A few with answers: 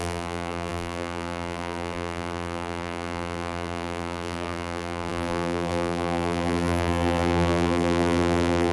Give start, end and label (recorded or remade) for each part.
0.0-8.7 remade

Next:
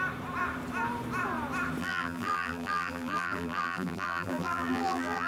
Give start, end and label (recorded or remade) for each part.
0.0-1.8 recorded; 1.8-5.3 remade

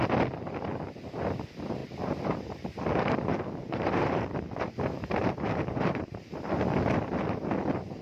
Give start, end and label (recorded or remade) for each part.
0.0-1.8 recorded; 1.8-2.6 remade; 2.6-3.6 recorded; 3.6-6.6 remade; 6.6-8.0 recorded

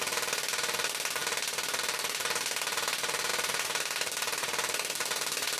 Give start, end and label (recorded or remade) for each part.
0.0-5.6 recorded

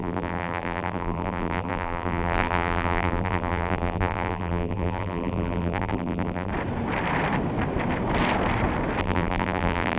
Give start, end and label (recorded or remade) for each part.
0.0-6.5 remade; 6.5-9.0 recorded; 9.0-10.0 remade

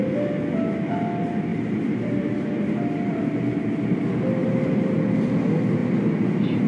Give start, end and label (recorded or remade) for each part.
0.0-1.5 recorded; 1.5-2.8 remade; 2.8-4.4 recorded; 4.4-5.0 remade; 5.0-6.7 recorded

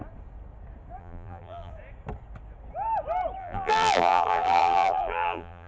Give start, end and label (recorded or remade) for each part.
0.0-1.0 recorded; 1.0-1.7 remade; 1.7-3.4 recorded; 3.4-5.7 remade

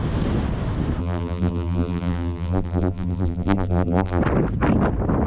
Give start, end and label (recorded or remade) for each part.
0.0-1.0 recorded; 1.0-4.2 remade; 4.2-5.3 recorded